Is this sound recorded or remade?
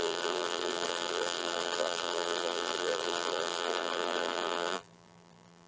remade